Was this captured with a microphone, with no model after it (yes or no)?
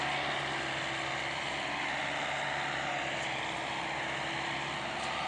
yes